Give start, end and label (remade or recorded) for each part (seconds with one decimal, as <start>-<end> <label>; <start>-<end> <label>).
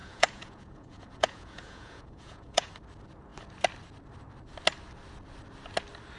0.0-2.7 remade; 2.7-6.2 recorded